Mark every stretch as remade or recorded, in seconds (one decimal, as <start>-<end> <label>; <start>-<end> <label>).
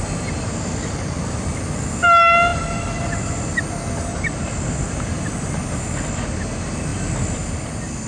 0.0-8.1 recorded